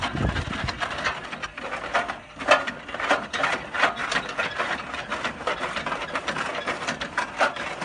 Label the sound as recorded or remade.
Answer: recorded